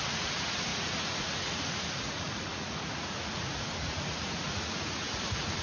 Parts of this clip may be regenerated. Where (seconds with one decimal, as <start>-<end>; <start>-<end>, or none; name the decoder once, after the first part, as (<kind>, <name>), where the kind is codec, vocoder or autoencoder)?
0.0-5.6 (vocoder, Vocos)